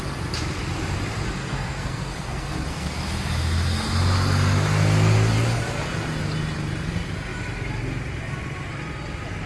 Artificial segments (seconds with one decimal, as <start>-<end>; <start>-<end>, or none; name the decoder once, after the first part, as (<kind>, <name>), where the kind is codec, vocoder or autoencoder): 1.4-3.0 (codec, SNAC)